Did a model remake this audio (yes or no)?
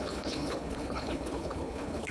yes